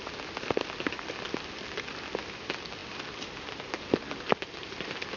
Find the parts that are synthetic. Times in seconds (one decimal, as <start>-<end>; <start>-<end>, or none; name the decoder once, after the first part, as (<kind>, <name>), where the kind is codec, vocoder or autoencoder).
none